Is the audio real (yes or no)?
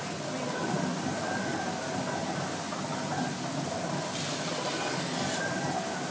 yes